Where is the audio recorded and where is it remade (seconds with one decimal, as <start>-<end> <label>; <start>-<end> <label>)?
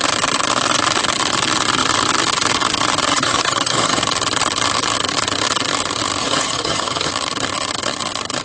0.0-3.1 recorded; 3.1-4.0 remade; 4.0-6.2 recorded; 6.2-7.1 remade; 7.1-8.4 recorded